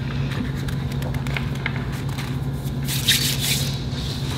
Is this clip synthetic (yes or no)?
no